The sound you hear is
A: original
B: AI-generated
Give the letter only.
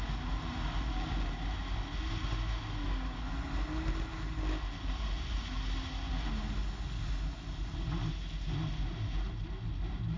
A